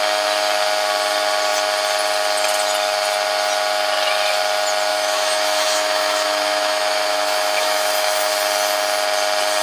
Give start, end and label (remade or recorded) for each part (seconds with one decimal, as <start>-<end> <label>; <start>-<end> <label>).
0.0-4.9 recorded; 4.9-8.3 remade; 8.3-9.6 recorded